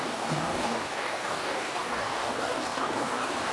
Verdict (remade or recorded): remade